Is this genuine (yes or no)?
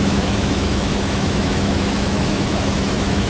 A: no